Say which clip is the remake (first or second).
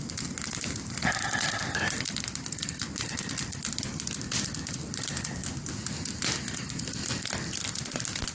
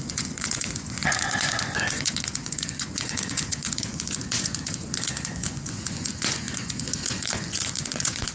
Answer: second